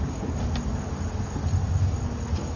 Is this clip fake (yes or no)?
no